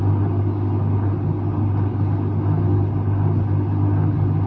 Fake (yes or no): no